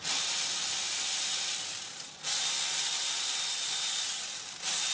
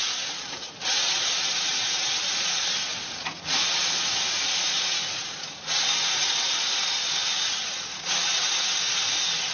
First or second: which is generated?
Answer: second